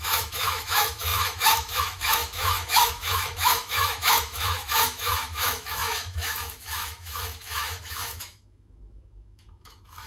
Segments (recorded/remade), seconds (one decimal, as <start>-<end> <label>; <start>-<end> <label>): 0.0-10.1 remade